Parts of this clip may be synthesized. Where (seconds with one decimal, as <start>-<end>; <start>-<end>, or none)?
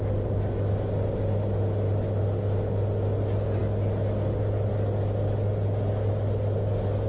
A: none